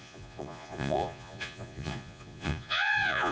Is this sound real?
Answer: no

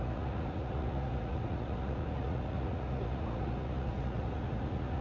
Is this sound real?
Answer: no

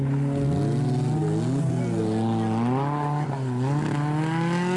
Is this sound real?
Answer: yes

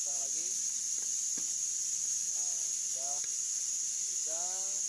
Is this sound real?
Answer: yes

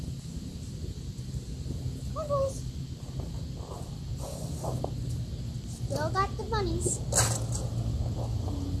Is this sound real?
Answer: yes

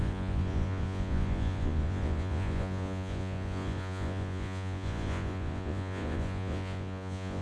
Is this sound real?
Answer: no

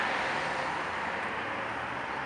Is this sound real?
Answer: yes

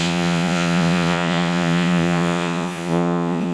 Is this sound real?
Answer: no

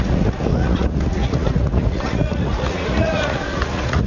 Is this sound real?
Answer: no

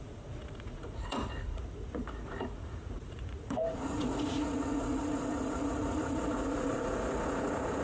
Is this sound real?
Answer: no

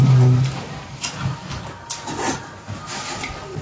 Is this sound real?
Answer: yes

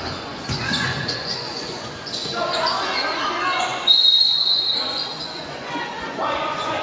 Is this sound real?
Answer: no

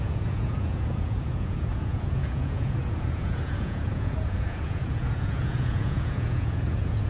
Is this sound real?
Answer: no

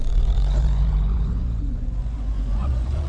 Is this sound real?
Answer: no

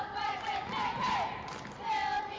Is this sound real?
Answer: yes